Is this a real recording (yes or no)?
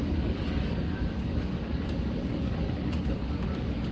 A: no